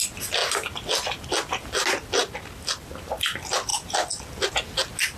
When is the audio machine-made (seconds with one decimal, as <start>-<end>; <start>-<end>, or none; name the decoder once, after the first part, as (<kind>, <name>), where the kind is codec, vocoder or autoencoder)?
none